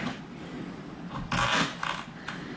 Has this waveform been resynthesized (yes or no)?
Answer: no